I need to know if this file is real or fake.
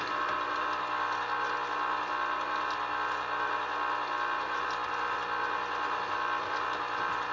real